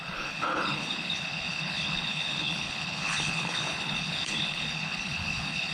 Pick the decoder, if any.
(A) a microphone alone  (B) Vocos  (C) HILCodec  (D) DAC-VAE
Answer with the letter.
C